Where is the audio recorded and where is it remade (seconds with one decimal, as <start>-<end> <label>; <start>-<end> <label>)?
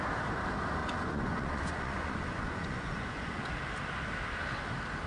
0.0-0.8 recorded; 0.8-3.5 remade; 3.5-5.1 recorded